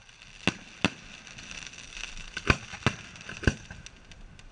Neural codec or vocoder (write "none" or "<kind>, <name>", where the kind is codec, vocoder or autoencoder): none